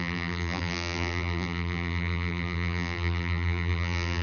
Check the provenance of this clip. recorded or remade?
remade